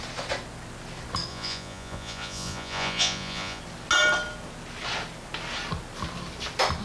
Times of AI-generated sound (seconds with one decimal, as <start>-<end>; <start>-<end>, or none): 1.3-3.6